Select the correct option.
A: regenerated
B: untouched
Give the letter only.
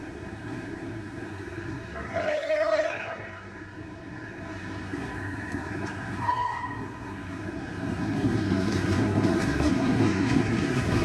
A